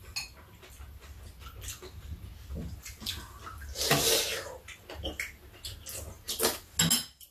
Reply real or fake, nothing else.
real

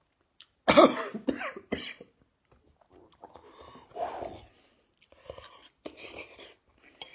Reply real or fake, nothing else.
real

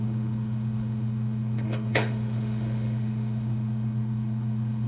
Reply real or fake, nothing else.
fake